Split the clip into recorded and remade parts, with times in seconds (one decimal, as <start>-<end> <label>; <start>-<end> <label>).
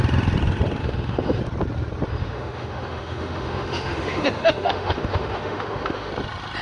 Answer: 0.0-0.8 recorded; 0.8-1.4 remade; 1.4-2.1 recorded; 2.1-6.1 remade; 6.1-6.6 recorded